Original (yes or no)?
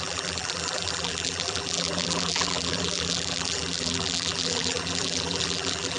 no